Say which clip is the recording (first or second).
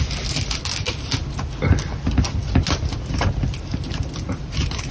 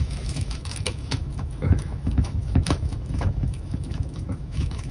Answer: first